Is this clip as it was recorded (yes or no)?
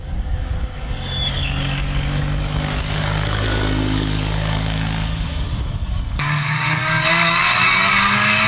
no